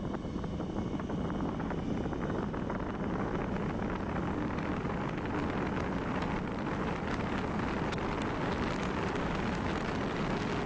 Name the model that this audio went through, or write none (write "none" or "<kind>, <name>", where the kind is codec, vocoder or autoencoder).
none